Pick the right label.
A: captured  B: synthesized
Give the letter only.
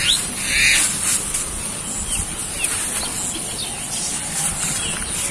A